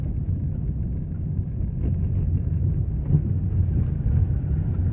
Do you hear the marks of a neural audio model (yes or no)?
no